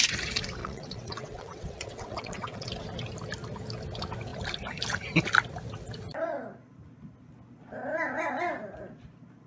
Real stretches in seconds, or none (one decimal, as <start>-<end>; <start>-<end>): 0.0-0.6; 2.7-9.5